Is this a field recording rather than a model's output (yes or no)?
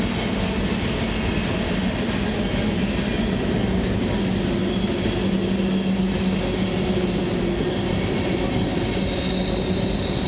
yes